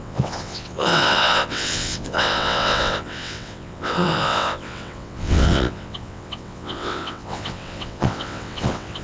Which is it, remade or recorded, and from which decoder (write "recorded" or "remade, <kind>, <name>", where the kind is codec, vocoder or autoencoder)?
remade, vocoder, WaveNeXt